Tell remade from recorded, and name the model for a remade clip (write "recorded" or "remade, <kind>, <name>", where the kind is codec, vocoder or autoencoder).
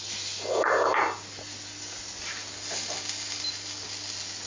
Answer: recorded